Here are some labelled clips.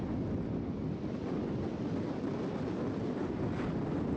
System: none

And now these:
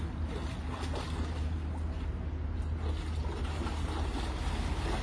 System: none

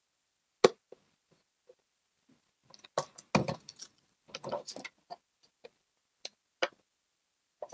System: none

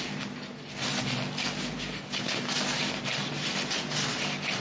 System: none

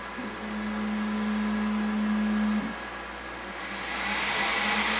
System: none